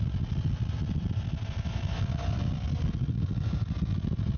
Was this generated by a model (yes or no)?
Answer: no